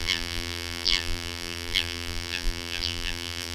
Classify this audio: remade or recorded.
remade